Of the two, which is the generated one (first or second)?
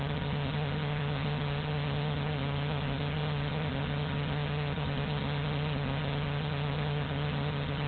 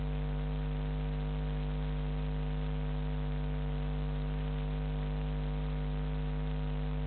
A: first